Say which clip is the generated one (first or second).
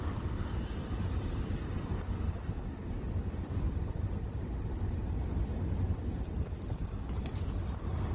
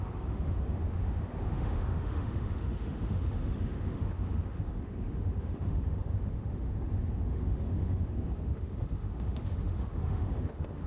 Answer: second